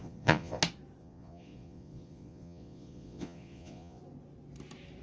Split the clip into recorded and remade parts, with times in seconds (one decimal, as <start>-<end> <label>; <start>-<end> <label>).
0.0-0.6 remade; 0.6-1.0 recorded; 1.0-4.0 remade; 4.0-5.0 recorded